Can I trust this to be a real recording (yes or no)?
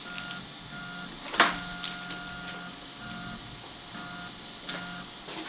yes